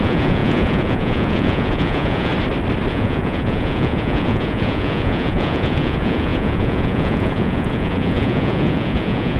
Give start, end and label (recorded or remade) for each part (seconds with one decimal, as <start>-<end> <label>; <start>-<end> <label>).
0.0-2.3 remade; 2.3-2.9 recorded; 2.9-9.4 remade